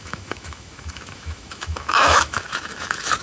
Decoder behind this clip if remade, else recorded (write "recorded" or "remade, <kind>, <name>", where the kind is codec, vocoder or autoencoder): remade, autoencoder, DAC-VAE